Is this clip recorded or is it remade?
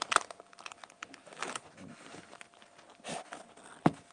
recorded